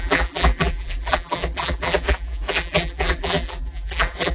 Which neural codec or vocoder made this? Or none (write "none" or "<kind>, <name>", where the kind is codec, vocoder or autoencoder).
vocoder, BigVGAN v2